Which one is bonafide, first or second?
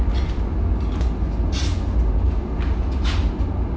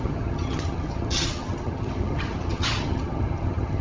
first